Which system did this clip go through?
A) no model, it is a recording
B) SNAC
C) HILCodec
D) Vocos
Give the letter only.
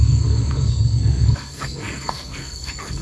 B